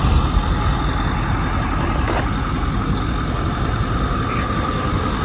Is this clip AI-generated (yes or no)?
no